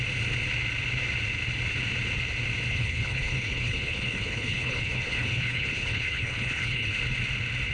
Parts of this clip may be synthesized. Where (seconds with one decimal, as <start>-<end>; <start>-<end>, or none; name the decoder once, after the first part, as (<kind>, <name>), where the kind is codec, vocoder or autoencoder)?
2.7-7.0 (codec, HILCodec)